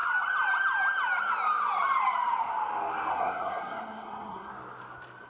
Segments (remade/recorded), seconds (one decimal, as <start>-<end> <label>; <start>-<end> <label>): 0.0-3.1 recorded; 3.1-4.5 remade; 4.5-5.3 recorded

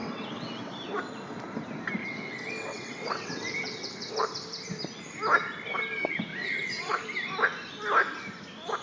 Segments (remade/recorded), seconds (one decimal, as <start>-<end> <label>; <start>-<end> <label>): 0.0-0.7 remade; 0.7-2.0 recorded; 2.0-4.1 remade; 4.1-6.3 recorded; 6.3-7.0 remade; 7.0-8.8 recorded

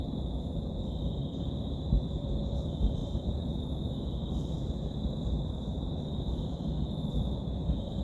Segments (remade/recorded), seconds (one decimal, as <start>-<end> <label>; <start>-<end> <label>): 0.0-1.2 recorded; 1.2-2.3 remade; 2.3-3.0 recorded; 3.0-8.0 remade